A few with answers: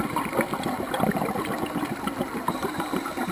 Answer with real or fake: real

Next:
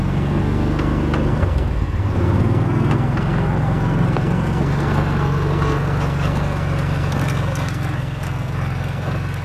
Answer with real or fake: fake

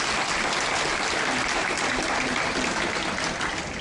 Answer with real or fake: real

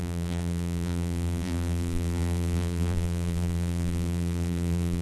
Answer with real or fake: fake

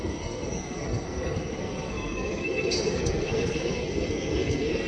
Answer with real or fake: fake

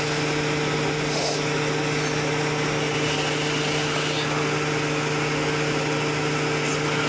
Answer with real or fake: real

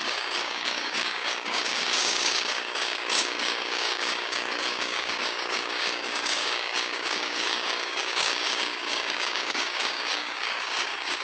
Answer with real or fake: fake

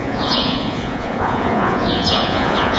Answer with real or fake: fake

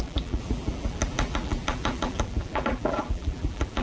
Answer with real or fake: fake